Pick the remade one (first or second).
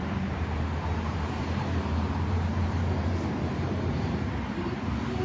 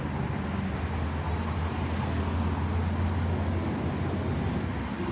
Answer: first